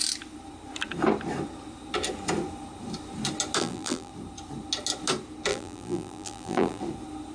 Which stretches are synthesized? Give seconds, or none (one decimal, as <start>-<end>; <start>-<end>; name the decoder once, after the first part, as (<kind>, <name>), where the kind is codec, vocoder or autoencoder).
3.6-4.1 (vocoder, BigVGAN v2); 5.5-6.8